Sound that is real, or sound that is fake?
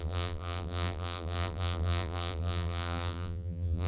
fake